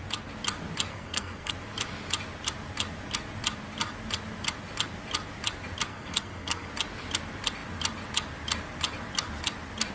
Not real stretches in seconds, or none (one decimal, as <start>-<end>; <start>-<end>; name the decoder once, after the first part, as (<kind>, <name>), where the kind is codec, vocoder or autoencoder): 0.9-1.5 (codec, SNAC); 5.9-6.7